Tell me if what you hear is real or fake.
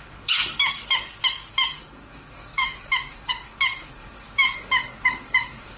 fake